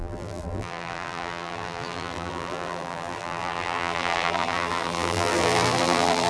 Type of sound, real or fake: fake